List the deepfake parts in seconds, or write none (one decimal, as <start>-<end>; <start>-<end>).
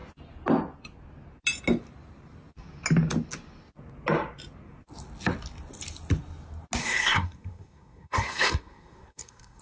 6.8-9.6